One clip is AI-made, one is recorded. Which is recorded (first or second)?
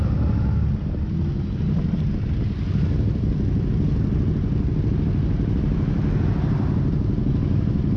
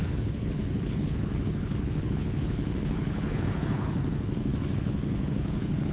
first